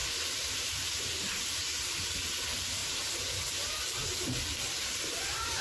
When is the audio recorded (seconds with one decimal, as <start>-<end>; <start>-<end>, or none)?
2.8-3.7